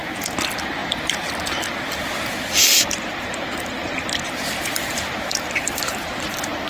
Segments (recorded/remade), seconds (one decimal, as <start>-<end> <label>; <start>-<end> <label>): 0.0-0.8 recorded; 0.8-1.3 remade; 1.3-2.7 recorded; 2.7-6.7 remade